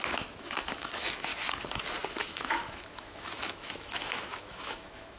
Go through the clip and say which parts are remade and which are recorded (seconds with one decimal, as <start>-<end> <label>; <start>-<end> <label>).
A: 0.0-1.3 remade; 1.3-2.1 recorded; 2.1-5.2 remade